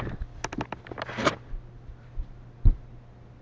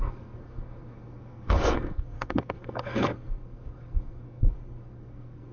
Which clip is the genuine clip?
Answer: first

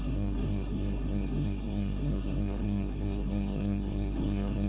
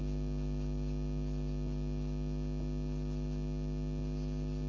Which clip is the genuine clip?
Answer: second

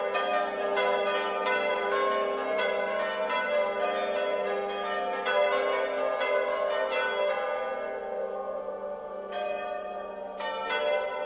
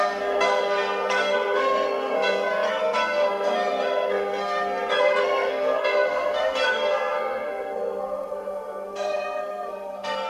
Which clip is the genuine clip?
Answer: first